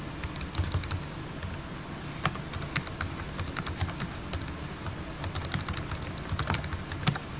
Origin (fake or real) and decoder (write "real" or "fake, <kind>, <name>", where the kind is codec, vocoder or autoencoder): real